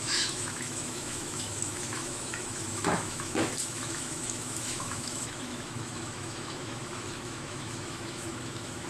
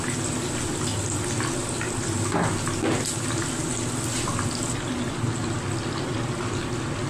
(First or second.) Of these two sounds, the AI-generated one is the first